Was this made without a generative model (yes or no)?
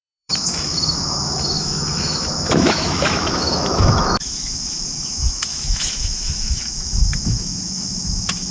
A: no